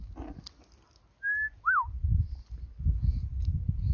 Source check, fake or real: real